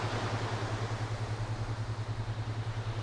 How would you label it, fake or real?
real